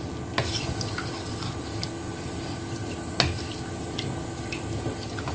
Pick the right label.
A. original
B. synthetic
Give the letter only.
A